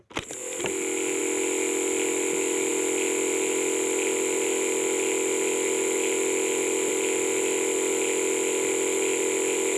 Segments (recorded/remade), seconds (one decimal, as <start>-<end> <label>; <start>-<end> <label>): 0.0-9.8 recorded